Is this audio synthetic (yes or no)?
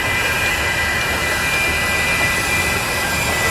no